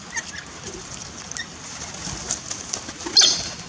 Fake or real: real